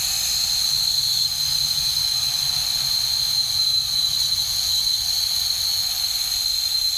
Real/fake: real